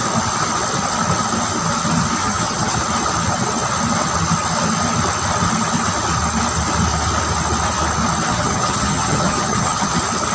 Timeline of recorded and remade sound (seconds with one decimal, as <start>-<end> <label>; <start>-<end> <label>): 0.0-2.2 recorded; 2.2-2.8 remade; 2.8-8.3 recorded; 8.3-9.9 remade; 9.9-10.3 recorded